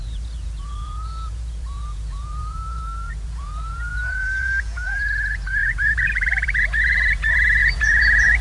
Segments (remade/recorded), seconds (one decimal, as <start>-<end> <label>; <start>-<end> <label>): 0.0-8.4 remade